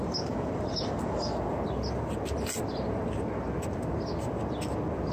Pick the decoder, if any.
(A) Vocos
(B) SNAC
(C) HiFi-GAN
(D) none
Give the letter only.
D